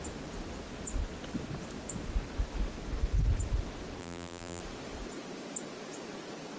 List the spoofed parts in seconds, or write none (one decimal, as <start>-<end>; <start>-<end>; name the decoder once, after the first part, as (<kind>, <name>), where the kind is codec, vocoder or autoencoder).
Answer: 4.0-4.6 (vocoder, BigVGAN v2)